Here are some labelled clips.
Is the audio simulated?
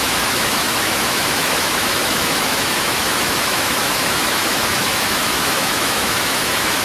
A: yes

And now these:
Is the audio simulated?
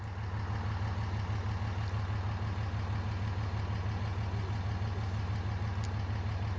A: no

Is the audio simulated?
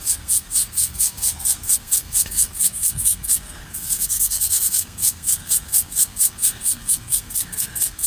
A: yes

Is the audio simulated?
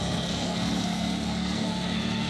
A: yes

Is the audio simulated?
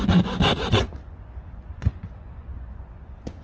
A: yes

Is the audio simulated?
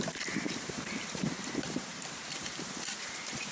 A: yes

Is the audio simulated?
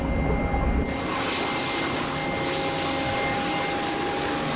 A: no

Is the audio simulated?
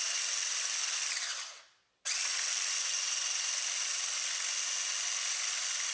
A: no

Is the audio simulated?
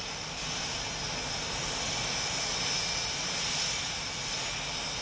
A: no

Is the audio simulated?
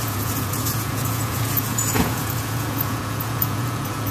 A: yes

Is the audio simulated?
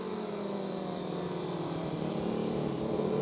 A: yes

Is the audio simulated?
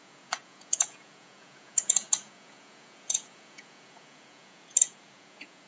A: yes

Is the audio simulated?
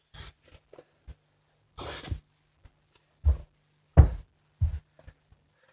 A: no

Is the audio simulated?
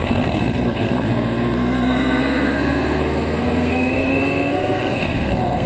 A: yes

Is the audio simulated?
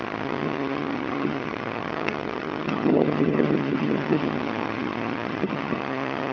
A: yes